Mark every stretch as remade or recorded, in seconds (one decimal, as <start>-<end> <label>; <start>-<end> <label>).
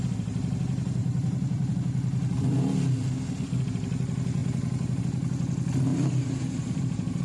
0.0-1.0 recorded; 1.0-1.7 remade; 1.7-5.9 recorded; 5.9-7.2 remade